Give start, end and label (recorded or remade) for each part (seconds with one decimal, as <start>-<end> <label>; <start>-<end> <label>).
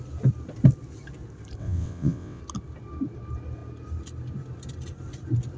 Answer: 0.0-1.6 recorded; 1.6-2.4 remade; 2.4-5.6 recorded